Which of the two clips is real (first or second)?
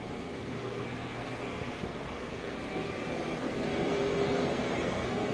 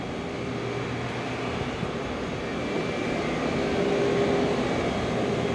second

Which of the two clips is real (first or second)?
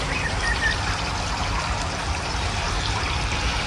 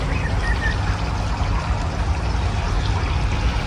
second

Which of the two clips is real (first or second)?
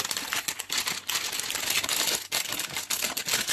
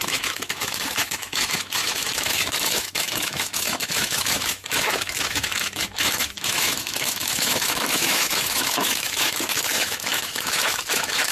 first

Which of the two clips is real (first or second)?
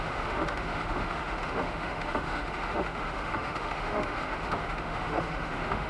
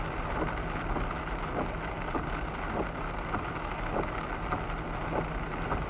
second